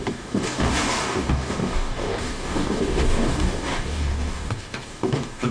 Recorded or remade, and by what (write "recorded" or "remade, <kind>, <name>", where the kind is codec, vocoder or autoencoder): remade, codec, DAC